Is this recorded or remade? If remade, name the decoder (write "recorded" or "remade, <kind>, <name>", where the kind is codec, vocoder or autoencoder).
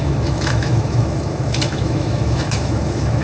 remade, autoencoder, DAC-VAE